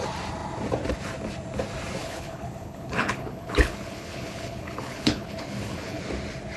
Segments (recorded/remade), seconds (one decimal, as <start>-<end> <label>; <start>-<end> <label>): 0.0-2.0 recorded; 2.0-6.0 remade; 6.0-6.6 recorded